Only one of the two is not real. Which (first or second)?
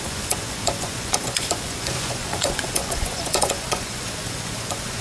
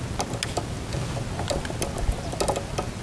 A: first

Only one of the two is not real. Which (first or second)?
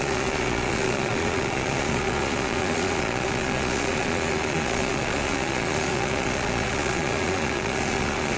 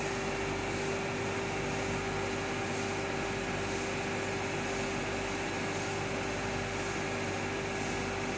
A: first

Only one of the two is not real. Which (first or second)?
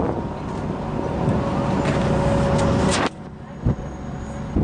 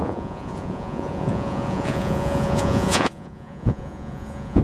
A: second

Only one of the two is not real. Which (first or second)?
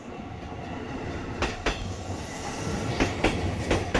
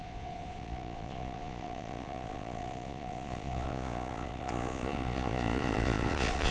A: second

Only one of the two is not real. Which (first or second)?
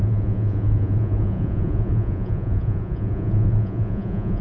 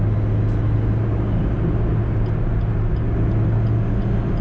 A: first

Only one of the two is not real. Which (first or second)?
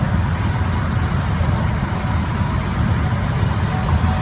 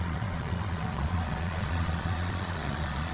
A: second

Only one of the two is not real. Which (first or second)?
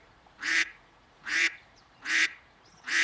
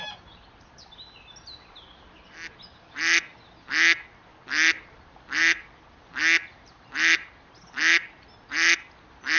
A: first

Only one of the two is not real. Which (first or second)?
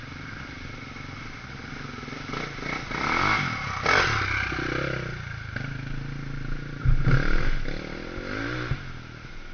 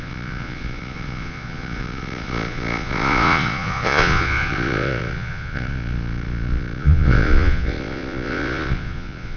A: second